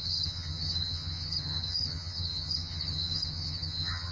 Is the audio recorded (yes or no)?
no